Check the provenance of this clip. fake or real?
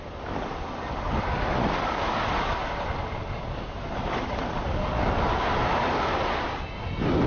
real